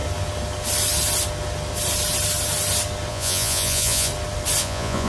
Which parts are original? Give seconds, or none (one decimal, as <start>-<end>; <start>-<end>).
0.0-3.1; 4.1-4.6